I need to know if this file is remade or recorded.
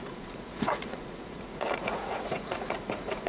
remade